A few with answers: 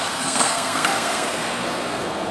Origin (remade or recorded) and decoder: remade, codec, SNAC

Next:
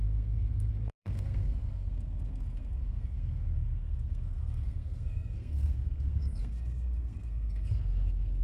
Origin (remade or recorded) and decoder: remade, codec, SNAC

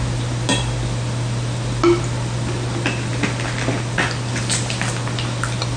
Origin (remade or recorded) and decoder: recorded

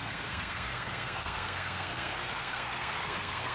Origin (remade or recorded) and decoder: remade, codec, SNAC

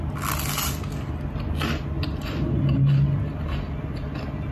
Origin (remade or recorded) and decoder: recorded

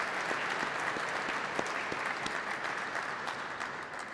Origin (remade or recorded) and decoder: recorded